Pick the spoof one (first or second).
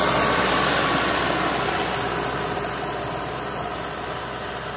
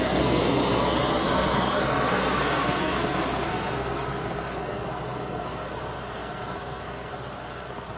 second